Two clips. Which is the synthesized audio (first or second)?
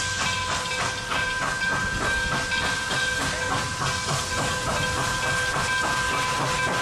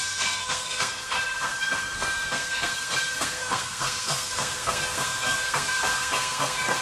second